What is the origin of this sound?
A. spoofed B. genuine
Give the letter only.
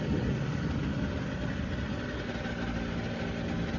B